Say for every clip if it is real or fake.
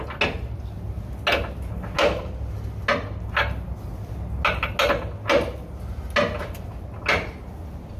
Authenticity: real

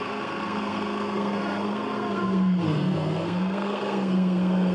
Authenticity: fake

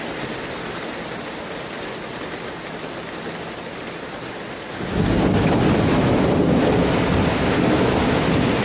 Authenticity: real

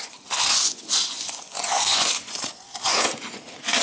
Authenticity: fake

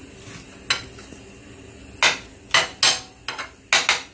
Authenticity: real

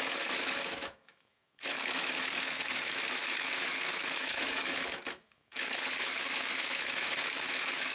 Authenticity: fake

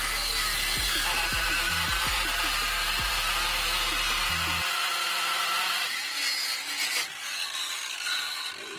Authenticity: real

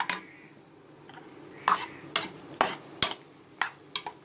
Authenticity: real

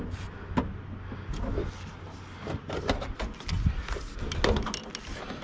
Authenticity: real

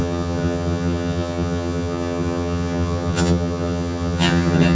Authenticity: fake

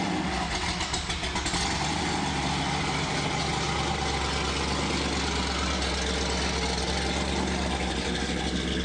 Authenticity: real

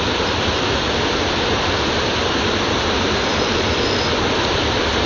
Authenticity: real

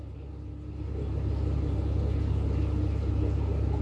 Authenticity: real